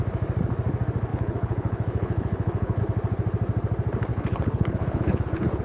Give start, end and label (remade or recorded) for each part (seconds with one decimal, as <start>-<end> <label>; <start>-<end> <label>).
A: 0.0-1.1 recorded; 1.1-2.8 remade; 2.8-4.1 recorded; 4.1-5.6 remade